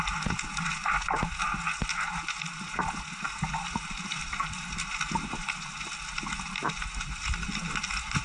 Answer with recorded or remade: recorded